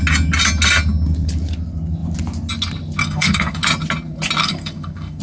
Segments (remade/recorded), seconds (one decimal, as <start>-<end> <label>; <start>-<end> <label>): 0.0-3.0 recorded; 3.0-3.6 remade; 3.6-4.4 recorded; 4.4-5.2 remade